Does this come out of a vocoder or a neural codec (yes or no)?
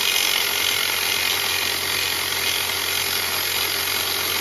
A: no